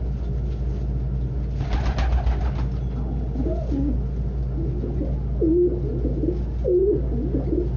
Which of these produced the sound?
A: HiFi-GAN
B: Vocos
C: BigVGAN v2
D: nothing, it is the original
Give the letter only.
D